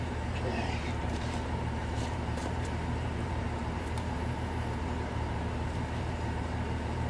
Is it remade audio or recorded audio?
remade